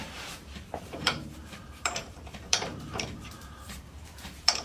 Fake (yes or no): yes